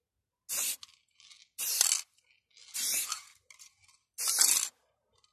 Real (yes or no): yes